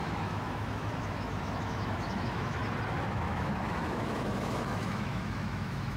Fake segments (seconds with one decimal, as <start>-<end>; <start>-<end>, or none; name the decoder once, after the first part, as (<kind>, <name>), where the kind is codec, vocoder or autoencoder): 0.0-2.6 (autoencoder, DAC-VAE); 3.1-6.0